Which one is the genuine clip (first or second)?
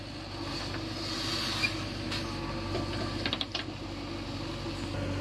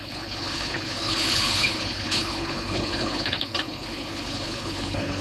first